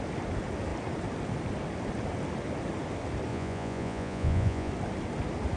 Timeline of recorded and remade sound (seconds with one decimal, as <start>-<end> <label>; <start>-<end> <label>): 0.0-3.3 recorded; 3.3-4.7 remade; 4.7-5.6 recorded